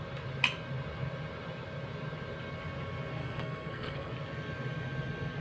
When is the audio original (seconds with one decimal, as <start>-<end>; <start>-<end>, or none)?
0.0-3.2; 4.1-5.4